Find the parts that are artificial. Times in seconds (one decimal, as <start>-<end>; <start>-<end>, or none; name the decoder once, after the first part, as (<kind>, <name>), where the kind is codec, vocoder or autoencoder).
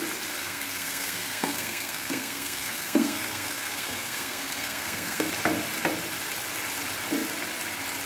0.4-5.3 (codec, SNAC)